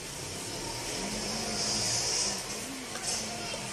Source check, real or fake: real